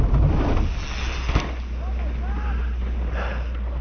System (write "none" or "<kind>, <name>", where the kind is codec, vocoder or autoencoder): none